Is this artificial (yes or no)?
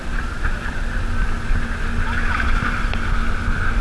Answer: no